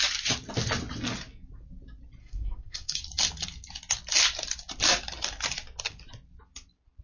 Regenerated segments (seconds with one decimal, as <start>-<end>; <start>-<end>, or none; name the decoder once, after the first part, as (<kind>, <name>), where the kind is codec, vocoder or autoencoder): 2.2-3.0 (codec, SNAC)